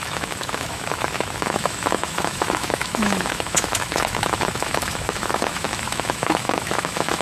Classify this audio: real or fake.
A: fake